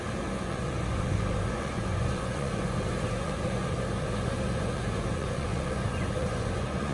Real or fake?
fake